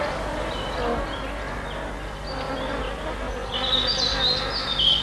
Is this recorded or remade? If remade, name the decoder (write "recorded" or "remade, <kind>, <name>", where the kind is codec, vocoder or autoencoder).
recorded